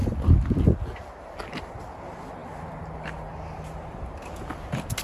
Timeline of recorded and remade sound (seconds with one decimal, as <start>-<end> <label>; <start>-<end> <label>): 0.0-5.0 recorded